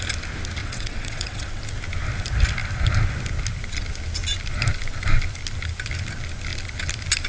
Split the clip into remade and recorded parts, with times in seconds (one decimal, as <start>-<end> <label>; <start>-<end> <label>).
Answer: 0.0-0.6 recorded; 0.6-1.6 remade; 1.6-7.3 recorded